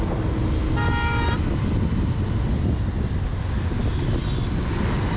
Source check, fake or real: real